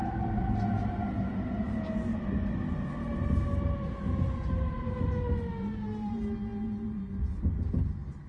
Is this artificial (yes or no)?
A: no